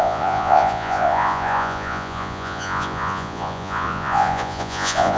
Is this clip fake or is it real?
fake